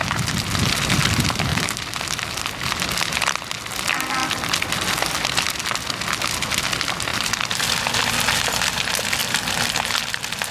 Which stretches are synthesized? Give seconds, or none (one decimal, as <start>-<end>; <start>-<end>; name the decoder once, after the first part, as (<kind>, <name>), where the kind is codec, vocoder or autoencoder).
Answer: 4.2-5.8 (vocoder, BigVGAN v2)